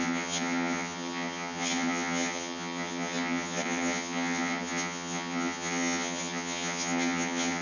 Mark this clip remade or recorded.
remade